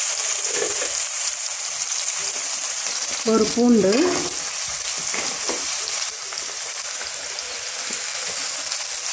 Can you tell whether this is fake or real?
real